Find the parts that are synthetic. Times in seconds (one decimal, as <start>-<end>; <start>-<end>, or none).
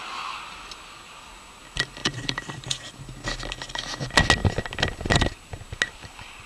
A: 2.0-2.9